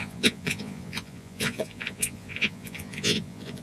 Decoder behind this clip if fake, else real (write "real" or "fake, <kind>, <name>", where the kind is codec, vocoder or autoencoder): fake, vocoder, Vocos